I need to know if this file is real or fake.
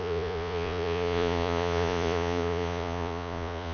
fake